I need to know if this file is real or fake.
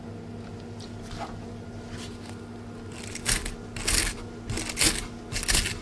real